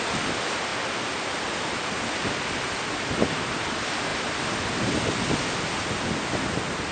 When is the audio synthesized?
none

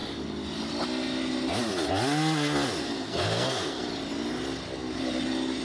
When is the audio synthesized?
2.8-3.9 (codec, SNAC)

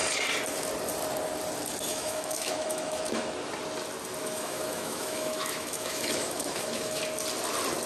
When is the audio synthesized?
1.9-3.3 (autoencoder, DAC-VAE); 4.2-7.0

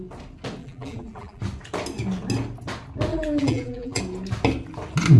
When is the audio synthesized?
0.6-1.4 (vocoder, BigVGAN v2); 3.1-4.0

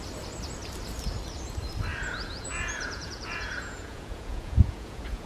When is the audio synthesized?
1.9-5.3 (vocoder, Vocos)

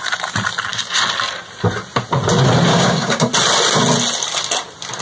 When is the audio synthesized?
2.7-3.3 (codec, DAC)